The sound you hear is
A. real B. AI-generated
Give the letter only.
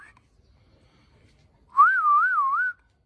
A